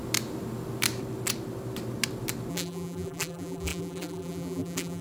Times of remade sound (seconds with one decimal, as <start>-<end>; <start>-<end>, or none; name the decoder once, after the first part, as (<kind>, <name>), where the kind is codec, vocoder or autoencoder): 2.5-5.0 (vocoder, BigVGAN v2)